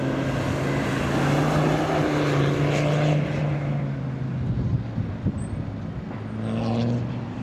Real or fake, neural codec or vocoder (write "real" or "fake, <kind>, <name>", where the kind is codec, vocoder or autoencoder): real